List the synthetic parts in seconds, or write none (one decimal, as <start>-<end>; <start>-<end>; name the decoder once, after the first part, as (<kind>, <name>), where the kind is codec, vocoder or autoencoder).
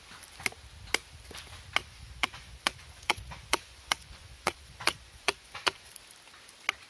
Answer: 1.8-5.9 (vocoder, Vocos)